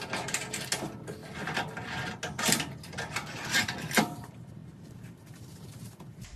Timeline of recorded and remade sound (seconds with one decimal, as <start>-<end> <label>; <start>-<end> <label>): 0.0-6.4 recorded